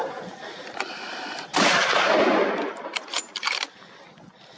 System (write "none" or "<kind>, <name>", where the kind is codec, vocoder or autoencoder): none